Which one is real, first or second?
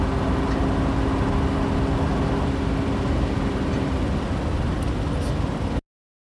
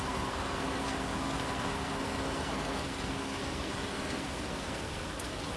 first